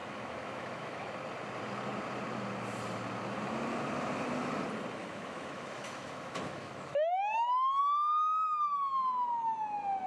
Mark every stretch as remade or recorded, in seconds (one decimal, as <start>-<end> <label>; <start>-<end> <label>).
0.0-1.1 remade; 1.1-5.0 recorded; 5.0-7.8 remade; 7.8-10.1 recorded